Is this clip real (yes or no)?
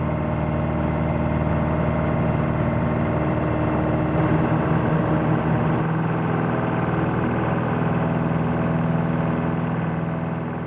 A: yes